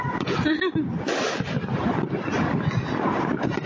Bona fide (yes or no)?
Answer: yes